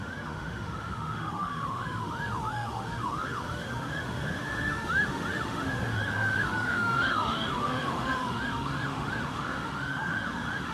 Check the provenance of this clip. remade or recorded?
remade